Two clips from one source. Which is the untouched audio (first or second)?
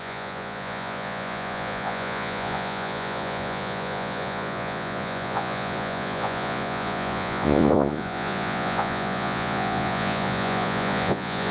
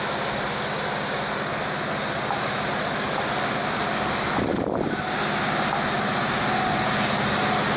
second